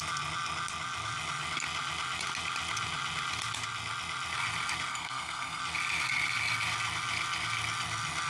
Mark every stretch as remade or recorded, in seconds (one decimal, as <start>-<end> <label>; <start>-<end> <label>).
0.0-4.9 recorded; 4.9-5.6 remade; 5.6-8.3 recorded